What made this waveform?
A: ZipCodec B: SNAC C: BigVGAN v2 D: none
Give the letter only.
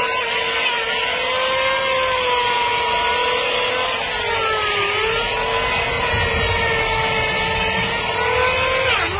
D